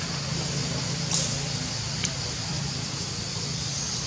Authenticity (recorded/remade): recorded